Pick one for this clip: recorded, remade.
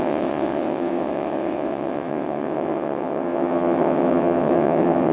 remade